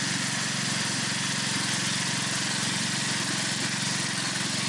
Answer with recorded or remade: recorded